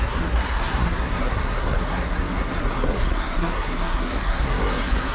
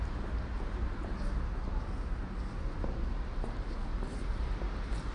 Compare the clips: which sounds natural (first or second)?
second